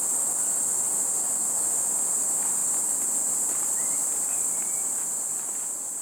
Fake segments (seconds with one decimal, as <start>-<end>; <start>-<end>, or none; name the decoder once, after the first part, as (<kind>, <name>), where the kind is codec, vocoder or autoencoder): 4.0-4.7 (vocoder, BigVGAN v2)